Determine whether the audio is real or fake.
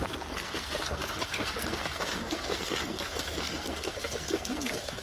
fake